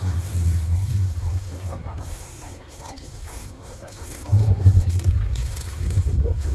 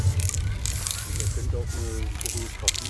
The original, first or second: second